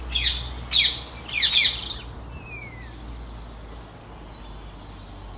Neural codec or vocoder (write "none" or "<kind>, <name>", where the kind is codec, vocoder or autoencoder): none